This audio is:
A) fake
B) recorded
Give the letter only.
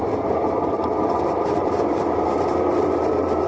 A